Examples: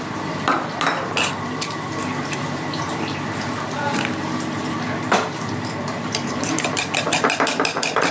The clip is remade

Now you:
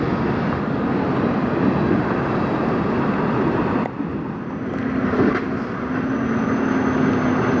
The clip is recorded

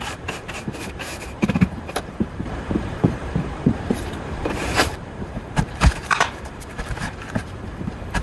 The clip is remade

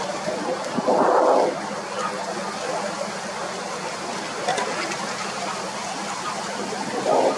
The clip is recorded